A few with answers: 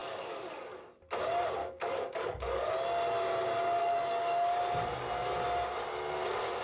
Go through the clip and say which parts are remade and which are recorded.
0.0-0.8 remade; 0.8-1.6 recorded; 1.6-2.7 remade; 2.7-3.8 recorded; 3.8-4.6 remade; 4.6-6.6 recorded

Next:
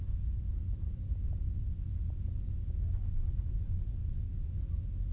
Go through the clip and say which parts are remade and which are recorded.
0.0-5.1 recorded